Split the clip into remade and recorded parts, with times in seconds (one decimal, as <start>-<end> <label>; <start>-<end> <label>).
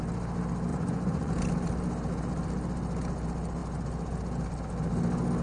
0.0-0.7 recorded; 0.7-1.3 remade; 1.3-5.4 recorded